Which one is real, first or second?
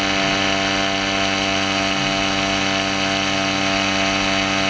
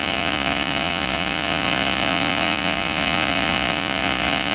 first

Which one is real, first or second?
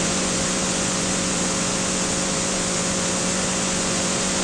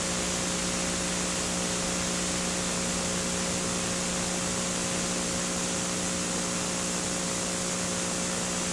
second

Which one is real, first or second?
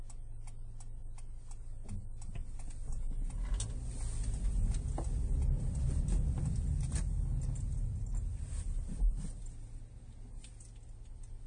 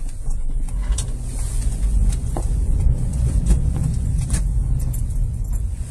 first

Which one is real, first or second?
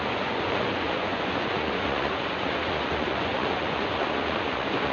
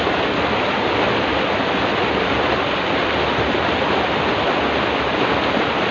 second